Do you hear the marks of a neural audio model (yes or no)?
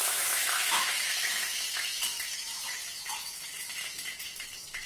yes